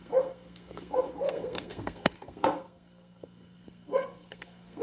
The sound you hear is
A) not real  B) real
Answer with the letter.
A